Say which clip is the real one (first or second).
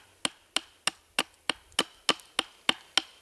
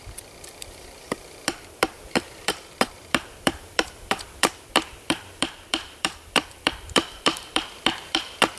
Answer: first